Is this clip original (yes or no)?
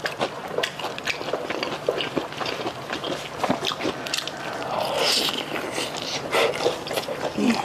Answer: yes